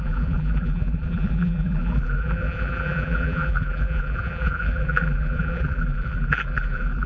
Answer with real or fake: fake